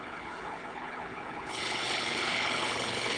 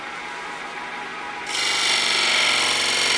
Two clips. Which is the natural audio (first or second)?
second